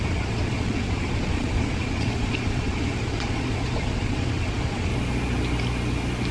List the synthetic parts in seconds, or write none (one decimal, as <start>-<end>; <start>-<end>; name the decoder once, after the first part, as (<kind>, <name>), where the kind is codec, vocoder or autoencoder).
0.0-4.9 (vocoder, Vocos)